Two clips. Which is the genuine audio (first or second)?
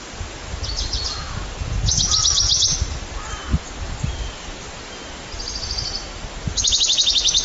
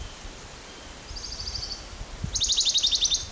first